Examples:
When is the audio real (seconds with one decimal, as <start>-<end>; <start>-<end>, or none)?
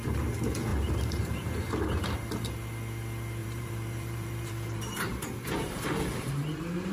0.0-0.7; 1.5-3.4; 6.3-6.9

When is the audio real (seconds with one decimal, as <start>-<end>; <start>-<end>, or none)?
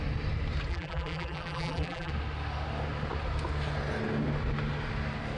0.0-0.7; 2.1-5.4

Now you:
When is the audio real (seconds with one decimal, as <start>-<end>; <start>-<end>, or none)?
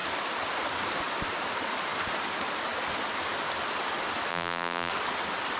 0.0-4.3; 4.9-5.6